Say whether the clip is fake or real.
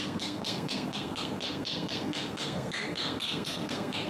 fake